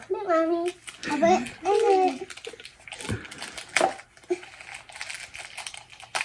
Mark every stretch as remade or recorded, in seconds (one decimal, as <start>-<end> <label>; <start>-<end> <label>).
0.0-6.2 recorded